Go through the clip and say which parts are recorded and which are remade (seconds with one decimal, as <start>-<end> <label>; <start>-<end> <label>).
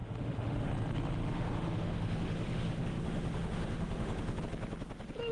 0.0-0.7 remade; 0.7-1.2 recorded; 1.2-4.4 remade; 4.4-5.3 recorded